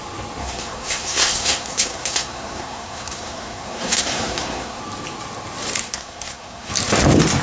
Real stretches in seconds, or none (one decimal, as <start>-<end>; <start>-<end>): 0.0-0.4; 4.8-5.8; 6.7-7.4